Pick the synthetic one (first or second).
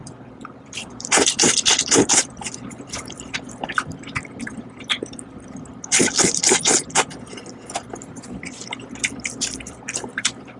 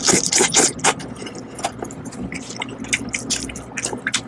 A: first